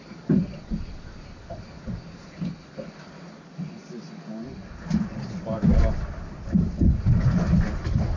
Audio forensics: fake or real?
real